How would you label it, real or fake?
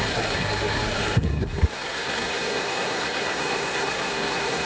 fake